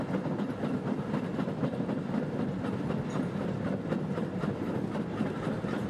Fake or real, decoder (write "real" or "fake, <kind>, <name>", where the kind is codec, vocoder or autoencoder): real